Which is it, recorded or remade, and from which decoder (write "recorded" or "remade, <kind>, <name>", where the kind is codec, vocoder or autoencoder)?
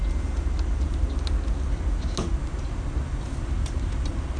recorded